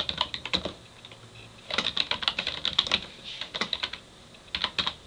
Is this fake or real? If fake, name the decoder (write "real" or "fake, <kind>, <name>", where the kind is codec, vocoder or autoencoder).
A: real